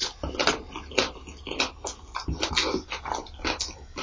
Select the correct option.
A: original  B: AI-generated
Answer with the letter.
A